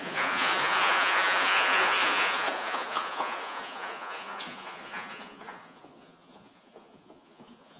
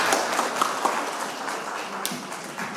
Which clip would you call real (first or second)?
second